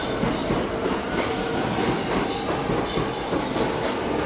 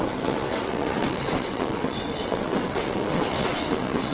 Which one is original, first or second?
first